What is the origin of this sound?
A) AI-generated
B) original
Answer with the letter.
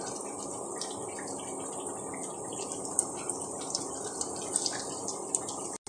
B